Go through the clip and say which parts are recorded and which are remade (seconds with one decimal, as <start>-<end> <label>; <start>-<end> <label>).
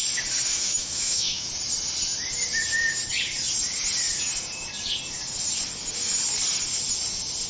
0.0-0.5 recorded; 0.5-1.5 remade; 1.5-7.5 recorded